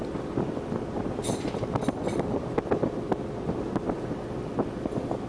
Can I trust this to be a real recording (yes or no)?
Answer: yes